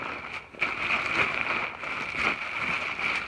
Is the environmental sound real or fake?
real